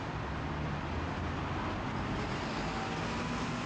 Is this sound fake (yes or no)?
no